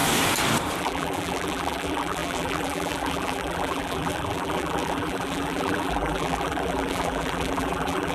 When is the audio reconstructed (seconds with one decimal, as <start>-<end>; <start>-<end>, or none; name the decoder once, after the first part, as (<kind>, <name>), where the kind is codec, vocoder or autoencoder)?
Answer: 0.8-8.1 (vocoder, BigVGAN v2)